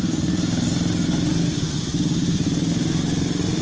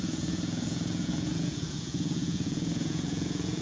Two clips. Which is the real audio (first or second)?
first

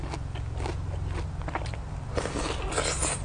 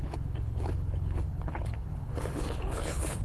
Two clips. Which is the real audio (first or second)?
first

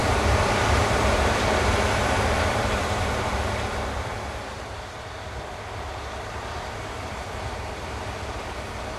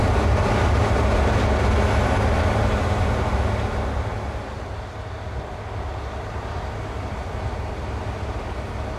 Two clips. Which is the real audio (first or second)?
second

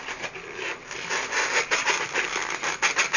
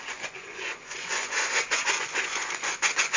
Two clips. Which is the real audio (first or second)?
first